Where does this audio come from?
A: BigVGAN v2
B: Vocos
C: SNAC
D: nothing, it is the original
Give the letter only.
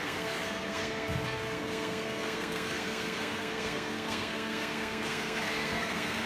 C